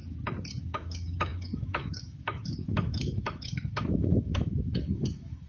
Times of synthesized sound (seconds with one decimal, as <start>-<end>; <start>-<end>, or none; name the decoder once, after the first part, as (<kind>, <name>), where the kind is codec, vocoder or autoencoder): 0.6-5.5 (autoencoder, DAC-VAE)